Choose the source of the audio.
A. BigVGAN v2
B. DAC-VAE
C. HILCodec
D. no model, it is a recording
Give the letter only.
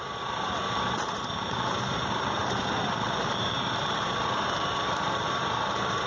A